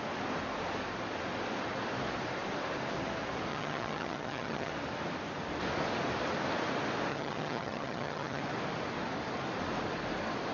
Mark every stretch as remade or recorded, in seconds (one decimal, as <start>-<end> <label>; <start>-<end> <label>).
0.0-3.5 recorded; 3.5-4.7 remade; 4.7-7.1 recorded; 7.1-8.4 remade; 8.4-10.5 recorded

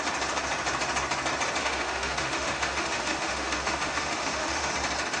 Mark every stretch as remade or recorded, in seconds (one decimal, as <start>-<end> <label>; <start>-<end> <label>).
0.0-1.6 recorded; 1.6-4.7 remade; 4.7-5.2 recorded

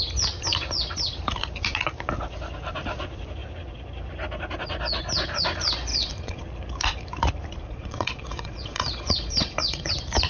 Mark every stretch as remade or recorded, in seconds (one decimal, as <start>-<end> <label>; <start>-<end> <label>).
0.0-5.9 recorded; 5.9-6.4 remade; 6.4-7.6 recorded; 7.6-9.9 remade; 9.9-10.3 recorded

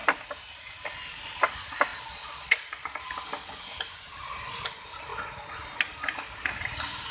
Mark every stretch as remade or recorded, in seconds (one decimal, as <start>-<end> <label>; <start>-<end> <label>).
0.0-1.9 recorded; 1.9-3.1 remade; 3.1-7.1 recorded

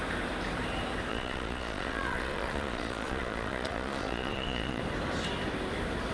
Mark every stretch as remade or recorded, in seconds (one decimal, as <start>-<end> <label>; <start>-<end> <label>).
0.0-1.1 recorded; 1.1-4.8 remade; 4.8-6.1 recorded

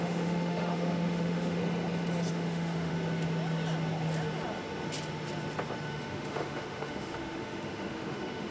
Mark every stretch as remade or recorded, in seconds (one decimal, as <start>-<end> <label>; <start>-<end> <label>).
0.0-1.6 remade; 1.6-2.3 recorded; 2.3-2.9 remade; 2.9-5.9 recorded; 5.9-8.5 remade

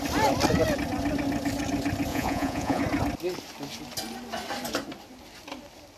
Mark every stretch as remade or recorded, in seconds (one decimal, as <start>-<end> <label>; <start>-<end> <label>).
0.0-2.1 recorded; 2.1-2.8 remade; 2.8-6.0 recorded

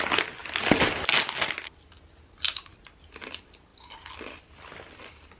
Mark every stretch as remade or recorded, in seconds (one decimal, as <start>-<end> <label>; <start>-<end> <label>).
0.0-5.4 recorded